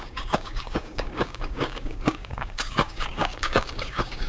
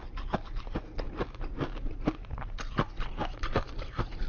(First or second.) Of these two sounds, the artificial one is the first